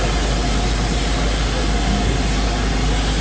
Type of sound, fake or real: real